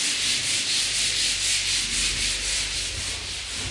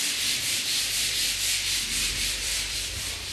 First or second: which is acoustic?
first